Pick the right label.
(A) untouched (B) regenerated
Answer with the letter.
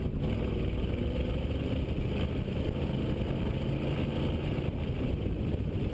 A